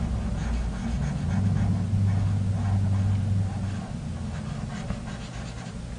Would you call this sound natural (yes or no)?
yes